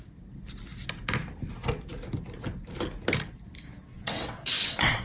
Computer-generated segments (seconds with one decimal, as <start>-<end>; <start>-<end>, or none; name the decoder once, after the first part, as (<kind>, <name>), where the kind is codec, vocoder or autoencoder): 3.9-5.0 (vocoder, WaveNeXt)